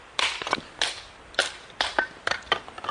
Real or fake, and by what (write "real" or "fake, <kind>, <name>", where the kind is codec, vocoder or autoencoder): real